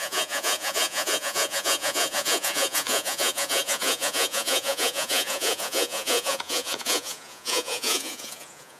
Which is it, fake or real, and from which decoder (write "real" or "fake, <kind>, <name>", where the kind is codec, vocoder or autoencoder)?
fake, vocoder, Vocos